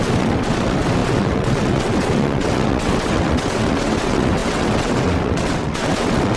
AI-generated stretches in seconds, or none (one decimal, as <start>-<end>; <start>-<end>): 0.0-6.4